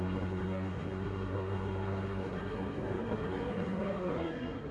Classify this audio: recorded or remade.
remade